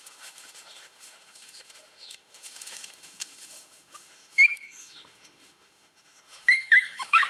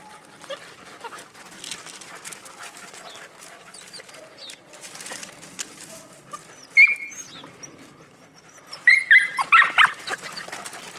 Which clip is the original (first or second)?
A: second